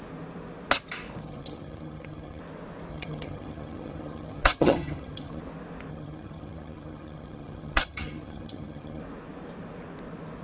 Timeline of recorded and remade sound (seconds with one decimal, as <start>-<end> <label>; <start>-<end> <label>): 0.0-1.2 recorded; 1.2-2.4 remade; 2.4-2.9 recorded; 2.9-5.4 remade; 5.4-5.9 recorded; 5.9-9.0 remade; 9.0-10.4 recorded